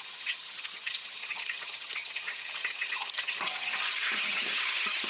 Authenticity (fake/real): fake